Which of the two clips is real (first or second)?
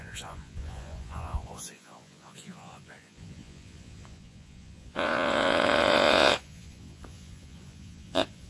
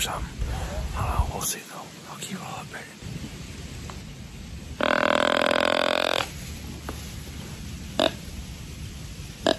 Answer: second